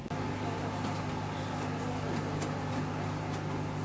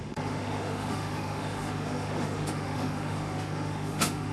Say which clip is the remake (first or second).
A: second